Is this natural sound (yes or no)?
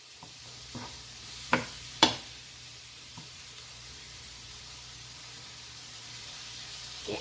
no